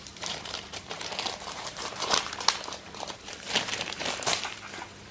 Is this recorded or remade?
remade